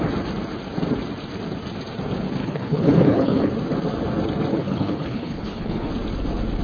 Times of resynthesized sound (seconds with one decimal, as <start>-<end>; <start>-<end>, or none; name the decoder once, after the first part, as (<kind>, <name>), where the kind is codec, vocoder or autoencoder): 2.4-3.5 (codec, HILCodec); 4.5-5.9